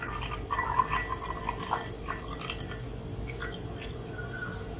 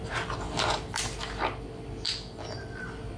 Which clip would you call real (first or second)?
first